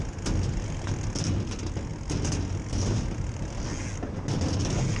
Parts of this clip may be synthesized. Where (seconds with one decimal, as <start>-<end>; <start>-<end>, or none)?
none